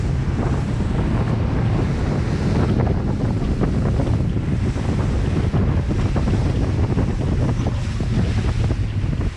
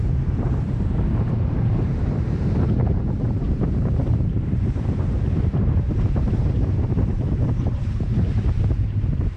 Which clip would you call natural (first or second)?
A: first